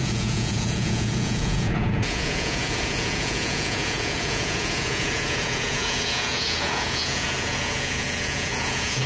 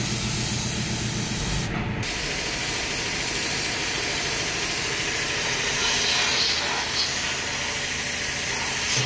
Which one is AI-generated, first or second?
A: first